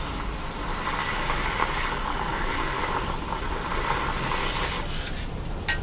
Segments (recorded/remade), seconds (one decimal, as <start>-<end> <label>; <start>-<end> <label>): 0.0-1.0 recorded; 1.0-3.1 remade; 3.1-5.8 recorded